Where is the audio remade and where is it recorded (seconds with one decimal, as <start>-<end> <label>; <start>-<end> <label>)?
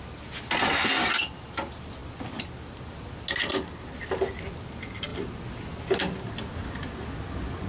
0.0-7.7 recorded